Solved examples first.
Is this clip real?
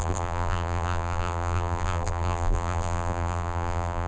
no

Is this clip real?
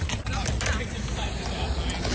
yes